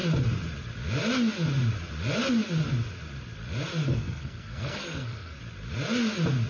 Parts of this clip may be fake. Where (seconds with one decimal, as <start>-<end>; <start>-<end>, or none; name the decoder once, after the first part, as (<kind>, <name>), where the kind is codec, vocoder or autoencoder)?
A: 3.9-5.4 (codec, SNAC)